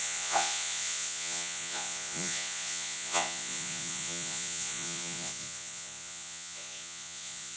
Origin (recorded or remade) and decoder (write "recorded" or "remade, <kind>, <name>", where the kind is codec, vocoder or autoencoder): remade, vocoder, Vocos